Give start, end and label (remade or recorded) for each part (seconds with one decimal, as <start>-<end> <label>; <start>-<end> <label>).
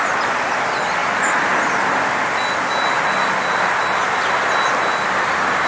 0.0-5.7 recorded